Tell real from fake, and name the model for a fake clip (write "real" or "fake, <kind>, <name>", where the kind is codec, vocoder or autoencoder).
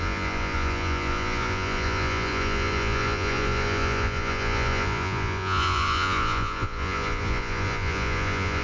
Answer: fake, vocoder, Vocos